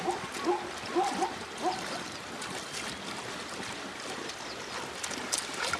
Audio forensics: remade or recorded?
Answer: recorded